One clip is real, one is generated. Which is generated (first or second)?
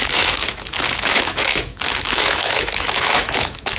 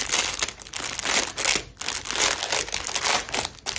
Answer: first